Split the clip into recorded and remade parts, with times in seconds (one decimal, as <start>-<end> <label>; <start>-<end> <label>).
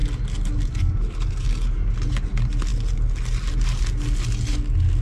0.0-5.0 recorded